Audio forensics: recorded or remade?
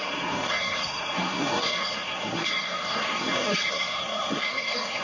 remade